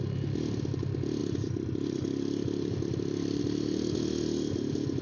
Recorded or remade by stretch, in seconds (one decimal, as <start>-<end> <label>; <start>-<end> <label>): 0.0-1.2 recorded; 1.2-3.4 remade; 3.4-5.0 recorded